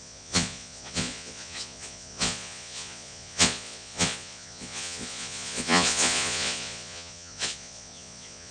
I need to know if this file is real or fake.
fake